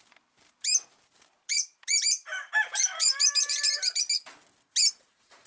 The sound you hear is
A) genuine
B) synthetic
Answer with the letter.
A